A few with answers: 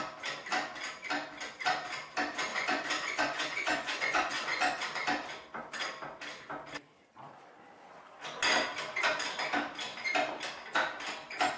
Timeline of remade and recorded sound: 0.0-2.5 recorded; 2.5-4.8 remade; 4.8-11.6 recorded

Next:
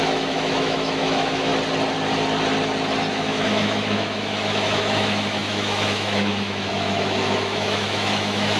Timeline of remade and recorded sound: 0.0-1.5 remade; 1.5-3.1 recorded; 3.1-8.6 remade

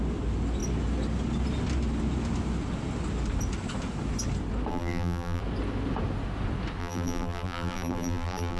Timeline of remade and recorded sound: 0.0-4.7 recorded; 4.7-5.4 remade; 5.4-6.8 recorded; 6.8-8.6 remade

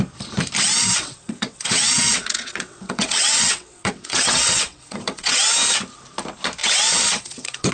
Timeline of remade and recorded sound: 0.0-0.8 recorded; 0.8-5.4 remade; 5.4-6.6 recorded; 6.6-7.7 remade

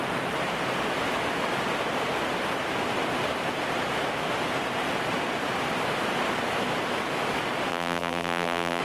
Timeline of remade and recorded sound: 0.0-7.7 recorded; 7.7-8.8 remade

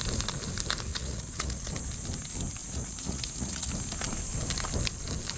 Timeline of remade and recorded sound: 0.0-0.9 recorded; 0.9-1.7 remade; 1.7-2.6 recorded; 2.6-3.7 remade; 3.7-5.4 recorded

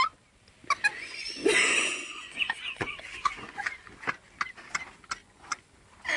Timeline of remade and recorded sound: 0.0-0.9 recorded; 0.9-4.0 remade; 4.0-5.2 recorded; 5.2-5.7 remade; 5.7-6.2 recorded

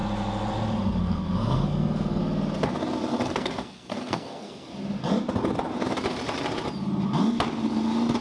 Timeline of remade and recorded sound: 0.0-1.0 recorded; 1.0-2.2 remade; 2.2-3.1 recorded; 3.1-4.7 remade; 4.7-8.2 recorded